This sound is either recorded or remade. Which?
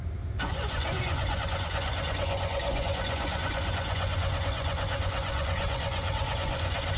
remade